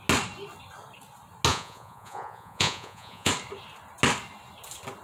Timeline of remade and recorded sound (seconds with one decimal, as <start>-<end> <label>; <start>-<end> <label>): 0.0-1.5 recorded; 1.5-3.3 remade; 3.3-5.0 recorded